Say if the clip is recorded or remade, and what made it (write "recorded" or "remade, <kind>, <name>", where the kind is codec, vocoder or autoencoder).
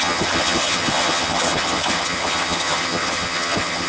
remade, vocoder, HiFi-GAN